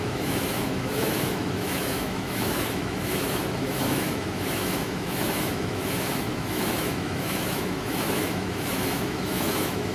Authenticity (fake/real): fake